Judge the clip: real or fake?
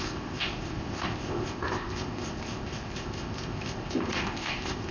fake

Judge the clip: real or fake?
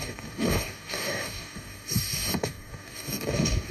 fake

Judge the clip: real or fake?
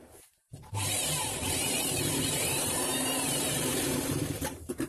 fake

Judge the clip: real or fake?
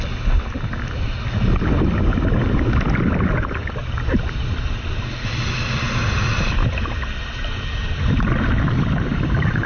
real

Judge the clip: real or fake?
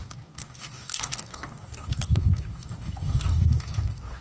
fake